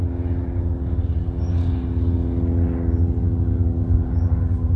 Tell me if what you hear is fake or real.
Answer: real